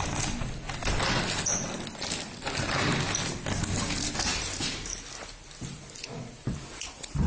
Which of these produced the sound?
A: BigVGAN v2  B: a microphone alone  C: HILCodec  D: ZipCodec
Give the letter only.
B